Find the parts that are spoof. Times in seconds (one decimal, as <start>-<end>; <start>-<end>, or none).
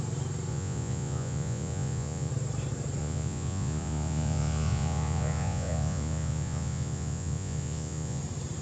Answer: 0.5-2.3; 3.0-8.2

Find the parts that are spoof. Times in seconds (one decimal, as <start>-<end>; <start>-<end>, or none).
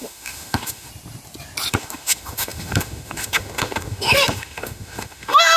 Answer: 0.0-0.9; 1.7-5.6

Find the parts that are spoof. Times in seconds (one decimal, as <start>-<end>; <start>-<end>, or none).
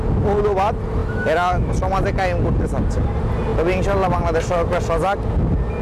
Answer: 1.0-1.7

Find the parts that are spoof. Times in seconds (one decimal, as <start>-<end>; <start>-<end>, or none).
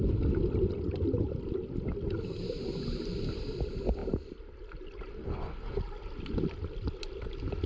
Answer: 5.1-5.8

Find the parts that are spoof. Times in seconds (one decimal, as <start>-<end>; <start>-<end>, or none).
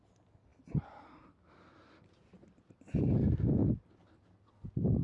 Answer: none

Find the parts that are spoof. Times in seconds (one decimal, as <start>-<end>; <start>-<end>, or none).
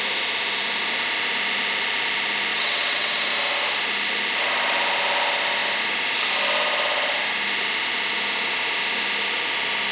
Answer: 2.5-3.3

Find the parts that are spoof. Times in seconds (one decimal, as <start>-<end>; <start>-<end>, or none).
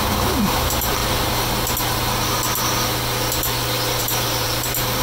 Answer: 0.0-1.0; 4.0-5.0